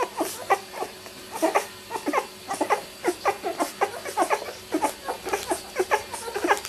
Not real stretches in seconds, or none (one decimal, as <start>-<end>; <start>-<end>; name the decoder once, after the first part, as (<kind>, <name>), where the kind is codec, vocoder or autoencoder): none